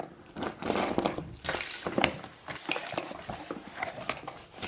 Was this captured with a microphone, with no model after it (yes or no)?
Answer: yes